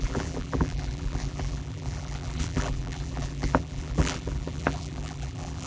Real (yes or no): no